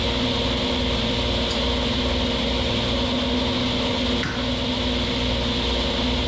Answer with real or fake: real